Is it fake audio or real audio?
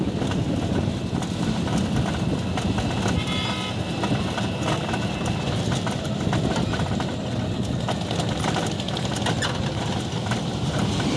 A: real